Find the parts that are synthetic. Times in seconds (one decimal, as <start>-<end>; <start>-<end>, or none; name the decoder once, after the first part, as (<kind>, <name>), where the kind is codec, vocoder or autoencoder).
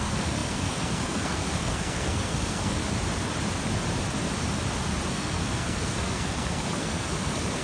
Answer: 0.0-2.8 (codec, SNAC); 5.1-7.6